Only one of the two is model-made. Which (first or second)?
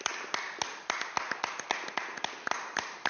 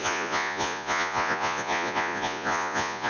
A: second